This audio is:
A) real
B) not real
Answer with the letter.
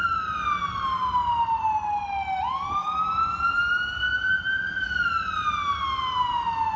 A